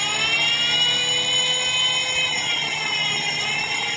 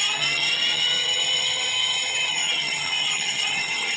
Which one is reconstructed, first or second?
second